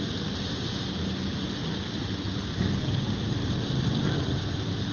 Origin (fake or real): real